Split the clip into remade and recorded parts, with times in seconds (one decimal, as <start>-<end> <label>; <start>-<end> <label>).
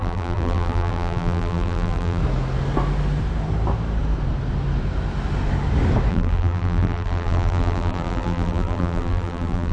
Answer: 0.0-2.2 remade; 2.2-6.1 recorded; 6.1-9.7 remade